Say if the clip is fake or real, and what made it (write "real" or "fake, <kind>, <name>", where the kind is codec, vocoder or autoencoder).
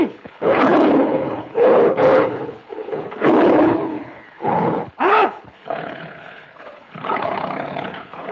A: fake, codec, HILCodec